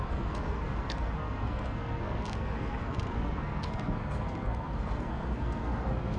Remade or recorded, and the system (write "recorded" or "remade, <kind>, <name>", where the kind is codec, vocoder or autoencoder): remade, codec, SNAC